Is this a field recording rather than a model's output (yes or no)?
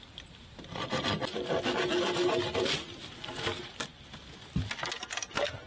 yes